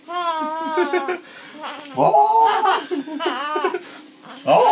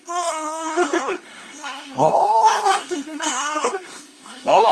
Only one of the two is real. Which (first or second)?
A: first